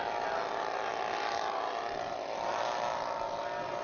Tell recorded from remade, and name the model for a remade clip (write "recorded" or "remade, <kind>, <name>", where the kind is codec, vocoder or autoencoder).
recorded